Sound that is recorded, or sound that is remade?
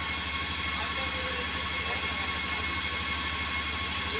recorded